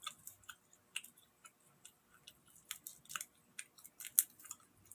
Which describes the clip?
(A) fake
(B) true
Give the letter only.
B